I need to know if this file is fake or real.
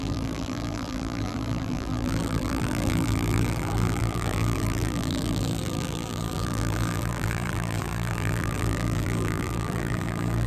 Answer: fake